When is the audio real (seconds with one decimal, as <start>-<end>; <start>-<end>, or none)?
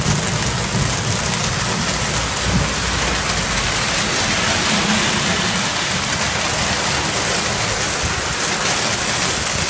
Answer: 0.0-9.7